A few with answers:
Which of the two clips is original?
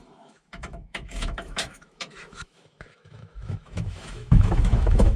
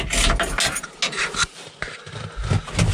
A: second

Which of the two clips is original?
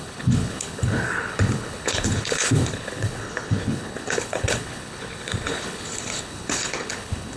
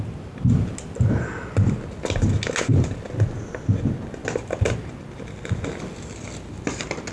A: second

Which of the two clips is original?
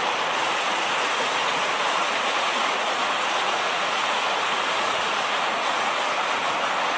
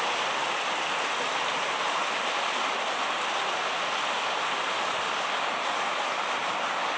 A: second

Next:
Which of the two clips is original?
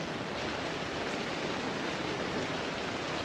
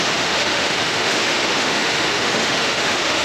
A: first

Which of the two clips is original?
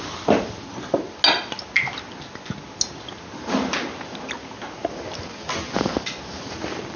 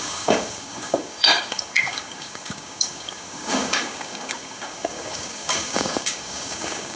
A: first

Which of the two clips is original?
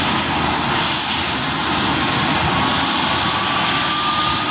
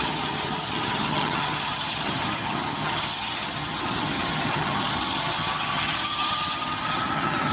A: first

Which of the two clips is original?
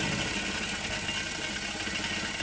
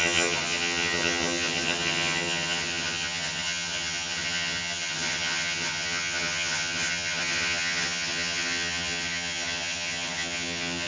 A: first